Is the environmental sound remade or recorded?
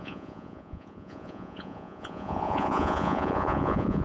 remade